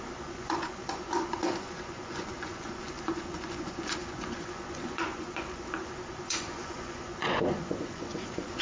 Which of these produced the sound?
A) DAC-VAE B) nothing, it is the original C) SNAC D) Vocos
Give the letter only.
D